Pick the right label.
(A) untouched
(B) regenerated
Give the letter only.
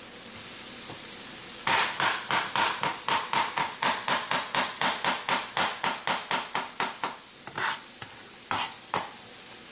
A